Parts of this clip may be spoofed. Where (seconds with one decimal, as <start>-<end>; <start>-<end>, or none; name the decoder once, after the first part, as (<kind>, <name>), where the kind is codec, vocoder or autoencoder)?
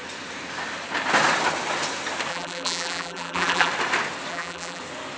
2.3-3.7 (vocoder, BigVGAN v2); 4.3-4.8